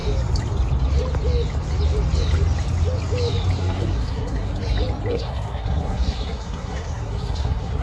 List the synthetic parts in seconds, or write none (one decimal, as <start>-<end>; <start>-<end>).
3.6-4.5; 5.1-7.8